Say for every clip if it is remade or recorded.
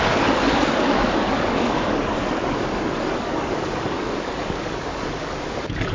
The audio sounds remade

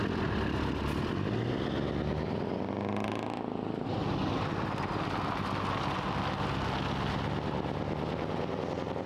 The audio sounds recorded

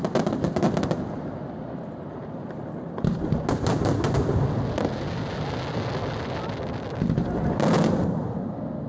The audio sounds recorded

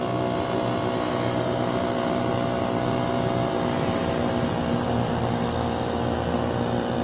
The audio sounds recorded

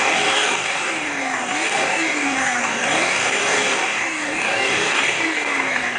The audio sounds remade